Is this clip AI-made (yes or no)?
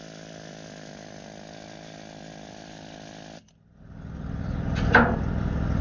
no